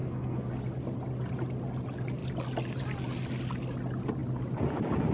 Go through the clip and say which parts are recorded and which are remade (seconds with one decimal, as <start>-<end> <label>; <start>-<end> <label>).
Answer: 0.0-0.5 remade; 0.5-5.1 recorded